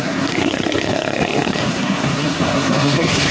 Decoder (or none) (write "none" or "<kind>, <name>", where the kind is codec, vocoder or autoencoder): codec, SNAC